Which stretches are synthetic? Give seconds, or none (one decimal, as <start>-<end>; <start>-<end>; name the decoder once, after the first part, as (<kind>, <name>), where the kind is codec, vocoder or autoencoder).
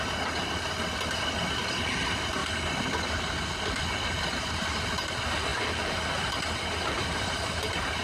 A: none